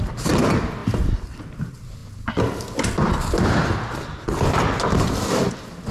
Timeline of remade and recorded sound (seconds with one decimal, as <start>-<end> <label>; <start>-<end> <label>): 0.0-5.9 recorded